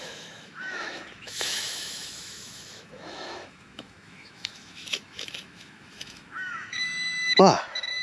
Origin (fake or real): fake